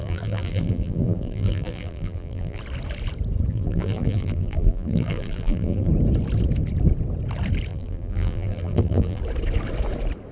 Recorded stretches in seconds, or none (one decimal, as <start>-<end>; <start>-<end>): 2.6-3.5; 5.9-7.7; 9.2-10.3

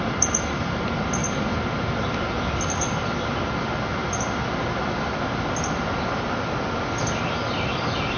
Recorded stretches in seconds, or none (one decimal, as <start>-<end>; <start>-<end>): 0.0-1.2; 2.0-8.2

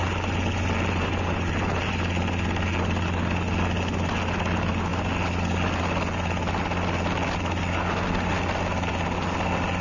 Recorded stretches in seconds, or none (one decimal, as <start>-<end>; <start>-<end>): 0.0-9.8

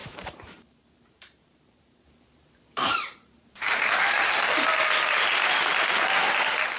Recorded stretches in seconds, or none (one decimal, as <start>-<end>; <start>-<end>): 4.1-6.8

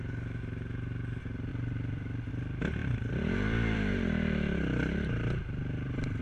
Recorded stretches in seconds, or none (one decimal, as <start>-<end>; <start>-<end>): 0.0-1.5; 2.3-2.8